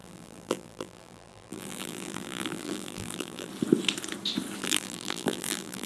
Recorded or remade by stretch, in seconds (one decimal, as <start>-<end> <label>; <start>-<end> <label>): 0.0-3.5 remade; 3.5-4.6 recorded; 4.6-5.9 remade